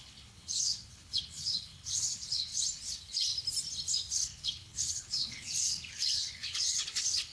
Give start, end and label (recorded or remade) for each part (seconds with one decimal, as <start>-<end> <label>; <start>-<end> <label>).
0.0-2.5 remade; 2.5-4.1 recorded; 4.1-7.3 remade